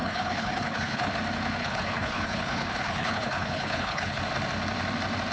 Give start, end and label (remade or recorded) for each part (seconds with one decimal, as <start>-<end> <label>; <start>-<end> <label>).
0.0-1.1 remade; 1.1-1.6 recorded; 1.6-4.2 remade; 4.2-5.3 recorded